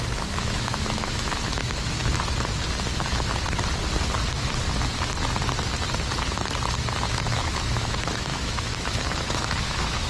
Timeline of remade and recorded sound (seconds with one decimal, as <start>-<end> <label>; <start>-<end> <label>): 0.0-2.0 remade; 2.0-7.1 recorded; 7.1-10.1 remade